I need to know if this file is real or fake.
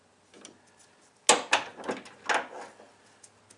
real